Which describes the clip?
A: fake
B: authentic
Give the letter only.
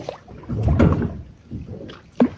B